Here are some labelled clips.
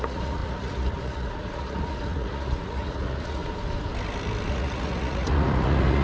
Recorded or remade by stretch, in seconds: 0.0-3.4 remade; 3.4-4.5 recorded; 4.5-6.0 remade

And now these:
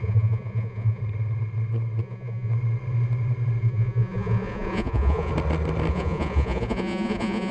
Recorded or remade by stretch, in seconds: 0.0-1.0 remade; 1.0-2.0 recorded; 2.0-2.5 remade; 2.5-3.6 recorded; 3.6-5.3 remade; 5.3-5.9 recorded; 5.9-7.5 remade

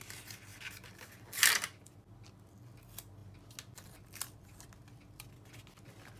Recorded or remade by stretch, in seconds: 0.0-6.2 recorded

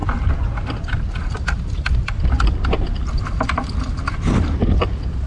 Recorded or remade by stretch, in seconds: 0.0-5.3 recorded

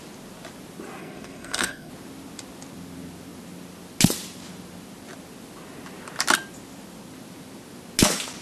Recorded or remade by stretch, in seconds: 0.0-1.0 recorded; 1.0-1.9 remade; 1.9-8.4 recorded

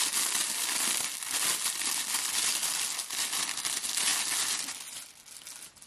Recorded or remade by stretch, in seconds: 0.0-5.9 recorded

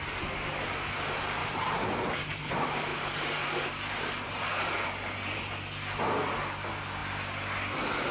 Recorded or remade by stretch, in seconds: 0.0-1.4 recorded; 1.4-2.5 remade; 2.5-2.9 recorded; 2.9-5.4 remade; 5.4-8.1 recorded